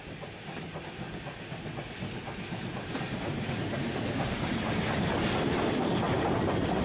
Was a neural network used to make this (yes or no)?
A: no